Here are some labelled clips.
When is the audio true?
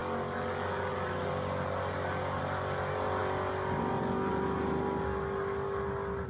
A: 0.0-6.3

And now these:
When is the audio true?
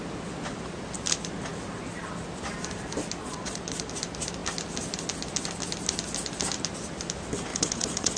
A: 0.0-3.2; 3.9-7.5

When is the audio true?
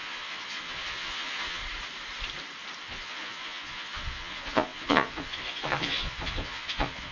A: 1.6-2.8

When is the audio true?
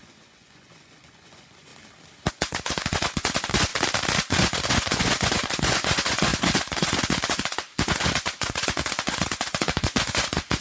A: 1.7-2.3; 3.7-4.3